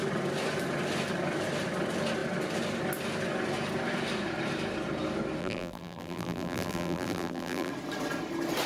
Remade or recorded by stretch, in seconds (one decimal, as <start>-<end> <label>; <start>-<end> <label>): 0.0-5.4 recorded; 5.4-7.7 remade; 7.7-8.7 recorded